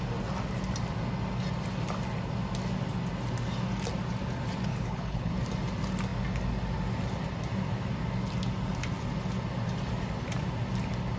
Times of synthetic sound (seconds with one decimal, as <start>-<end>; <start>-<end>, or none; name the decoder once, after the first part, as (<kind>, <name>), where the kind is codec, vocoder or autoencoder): 4.7-5.3 (codec, HILCodec)